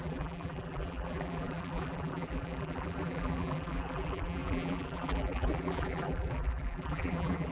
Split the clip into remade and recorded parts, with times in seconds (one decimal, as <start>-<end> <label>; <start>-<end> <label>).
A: 0.0-7.5 remade